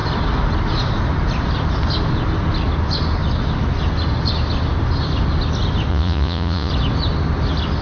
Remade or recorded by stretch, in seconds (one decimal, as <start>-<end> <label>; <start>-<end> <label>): 0.0-5.9 recorded; 5.9-6.7 remade; 6.7-7.8 recorded